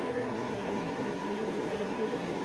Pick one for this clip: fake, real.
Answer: fake